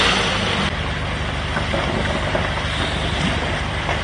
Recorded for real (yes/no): yes